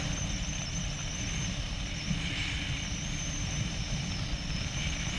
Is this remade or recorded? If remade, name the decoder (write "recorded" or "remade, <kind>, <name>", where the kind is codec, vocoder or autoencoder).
recorded